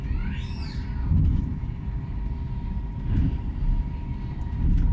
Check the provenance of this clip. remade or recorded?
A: recorded